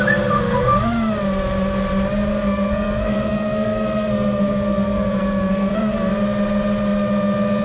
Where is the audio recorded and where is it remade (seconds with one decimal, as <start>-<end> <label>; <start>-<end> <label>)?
0.0-2.3 recorded; 2.3-5.8 remade; 5.8-7.6 recorded